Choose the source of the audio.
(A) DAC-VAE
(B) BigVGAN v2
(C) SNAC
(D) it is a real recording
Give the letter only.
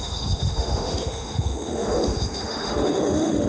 A